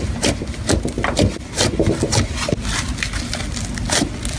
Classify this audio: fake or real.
real